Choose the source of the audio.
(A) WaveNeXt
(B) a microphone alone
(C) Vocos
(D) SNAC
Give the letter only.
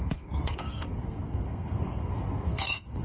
D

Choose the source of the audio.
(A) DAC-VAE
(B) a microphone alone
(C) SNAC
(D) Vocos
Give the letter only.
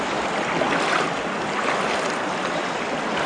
B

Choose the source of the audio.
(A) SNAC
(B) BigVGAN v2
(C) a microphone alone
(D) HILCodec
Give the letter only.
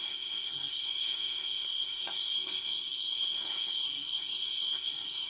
A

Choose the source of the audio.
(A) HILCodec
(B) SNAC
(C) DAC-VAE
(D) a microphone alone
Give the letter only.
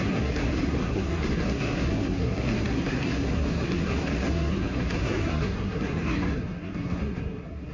B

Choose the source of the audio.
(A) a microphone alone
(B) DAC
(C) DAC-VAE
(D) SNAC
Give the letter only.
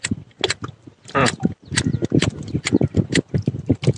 A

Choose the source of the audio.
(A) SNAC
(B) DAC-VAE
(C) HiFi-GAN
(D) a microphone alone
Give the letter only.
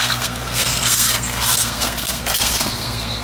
A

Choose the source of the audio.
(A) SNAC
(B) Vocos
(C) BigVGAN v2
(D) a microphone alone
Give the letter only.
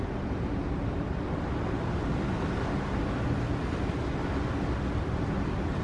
D